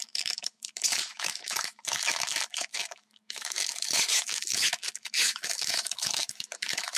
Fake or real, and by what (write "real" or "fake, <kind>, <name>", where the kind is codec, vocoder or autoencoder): fake, autoencoder, DAC-VAE